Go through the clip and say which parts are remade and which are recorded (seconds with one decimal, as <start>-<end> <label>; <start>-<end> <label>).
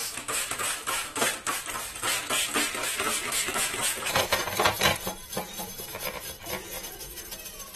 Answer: 0.0-1.2 remade; 1.2-2.8 recorded; 2.8-4.2 remade; 4.2-7.8 recorded